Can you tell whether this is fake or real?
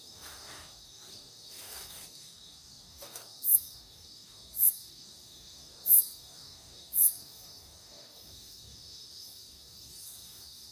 fake